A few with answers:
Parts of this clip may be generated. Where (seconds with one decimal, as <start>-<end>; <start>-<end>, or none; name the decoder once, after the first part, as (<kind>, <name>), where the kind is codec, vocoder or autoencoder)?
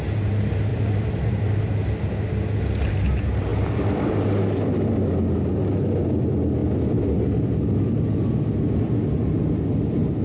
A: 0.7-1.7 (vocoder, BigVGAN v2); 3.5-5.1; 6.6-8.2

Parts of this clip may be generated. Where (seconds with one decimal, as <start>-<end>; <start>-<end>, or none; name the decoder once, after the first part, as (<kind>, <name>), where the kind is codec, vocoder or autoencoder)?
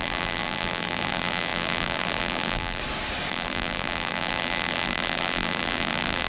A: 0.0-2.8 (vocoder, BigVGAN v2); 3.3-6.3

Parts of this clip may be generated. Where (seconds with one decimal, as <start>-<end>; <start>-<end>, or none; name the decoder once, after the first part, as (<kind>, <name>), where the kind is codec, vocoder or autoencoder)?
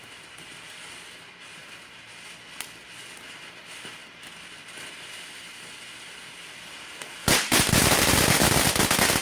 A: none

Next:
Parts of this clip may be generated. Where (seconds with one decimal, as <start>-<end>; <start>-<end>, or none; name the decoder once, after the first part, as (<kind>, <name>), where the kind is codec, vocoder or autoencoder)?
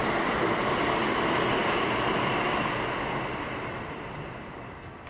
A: 0.0-0.6 (vocoder, BigVGAN v2); 1.6-5.1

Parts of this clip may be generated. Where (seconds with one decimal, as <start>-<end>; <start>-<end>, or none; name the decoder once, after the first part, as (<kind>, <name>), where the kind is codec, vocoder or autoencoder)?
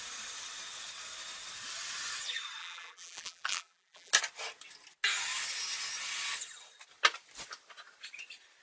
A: 2.6-4.1 (vocoder, BigVGAN v2)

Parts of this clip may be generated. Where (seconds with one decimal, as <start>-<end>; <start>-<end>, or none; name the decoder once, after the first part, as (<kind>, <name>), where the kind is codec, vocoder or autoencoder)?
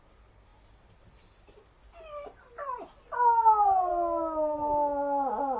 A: none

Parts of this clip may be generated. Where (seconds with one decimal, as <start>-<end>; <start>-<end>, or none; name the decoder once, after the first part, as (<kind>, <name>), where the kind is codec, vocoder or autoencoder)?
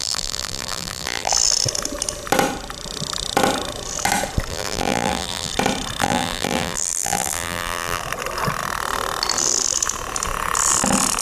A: 0.0-1.3 (vocoder, BigVGAN v2); 4.5-5.5; 6.0-8.0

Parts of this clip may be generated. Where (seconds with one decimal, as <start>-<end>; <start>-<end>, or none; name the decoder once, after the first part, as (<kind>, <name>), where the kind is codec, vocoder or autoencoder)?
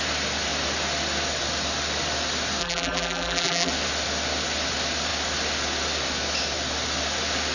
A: 2.6-3.7 (vocoder, BigVGAN v2)